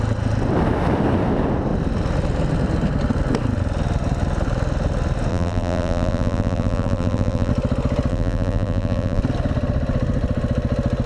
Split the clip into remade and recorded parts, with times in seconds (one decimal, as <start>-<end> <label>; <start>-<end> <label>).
0.0-5.3 recorded; 5.3-7.5 remade; 7.5-8.1 recorded; 8.1-9.2 remade; 9.2-11.1 recorded

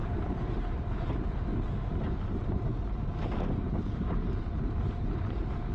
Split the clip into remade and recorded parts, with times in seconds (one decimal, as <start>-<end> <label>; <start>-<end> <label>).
0.0-1.5 remade; 1.5-2.3 recorded; 2.3-3.1 remade; 3.1-3.8 recorded; 3.8-5.7 remade

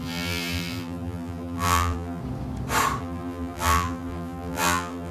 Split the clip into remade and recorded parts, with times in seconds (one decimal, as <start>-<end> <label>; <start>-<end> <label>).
0.0-2.2 remade; 2.2-3.0 recorded; 3.0-5.1 remade